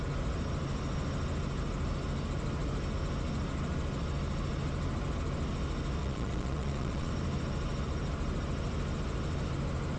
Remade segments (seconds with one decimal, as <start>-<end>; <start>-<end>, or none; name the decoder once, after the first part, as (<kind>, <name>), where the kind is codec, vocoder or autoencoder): 6.0-7.1 (vocoder, Vocos)